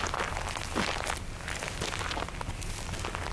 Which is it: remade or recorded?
recorded